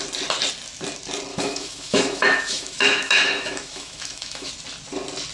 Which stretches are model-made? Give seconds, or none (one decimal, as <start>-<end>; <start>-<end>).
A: 1.3-4.5